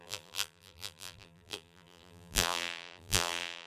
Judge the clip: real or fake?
fake